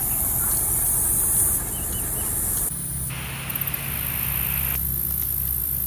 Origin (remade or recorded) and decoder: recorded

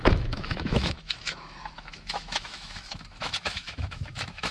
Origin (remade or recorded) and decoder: remade, autoencoder, DAC-VAE